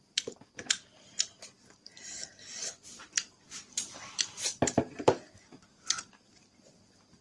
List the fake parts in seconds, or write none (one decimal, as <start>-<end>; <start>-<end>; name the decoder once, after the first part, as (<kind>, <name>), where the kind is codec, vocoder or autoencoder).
0.0-7.2 (vocoder, BigVGAN v2)